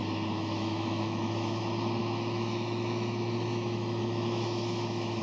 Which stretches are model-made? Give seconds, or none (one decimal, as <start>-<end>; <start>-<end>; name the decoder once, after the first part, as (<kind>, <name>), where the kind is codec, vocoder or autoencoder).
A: 0.0-1.6 (autoencoder, DAC-VAE); 2.0-5.2